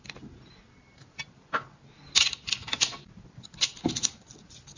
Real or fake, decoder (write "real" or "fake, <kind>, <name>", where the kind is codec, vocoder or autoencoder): real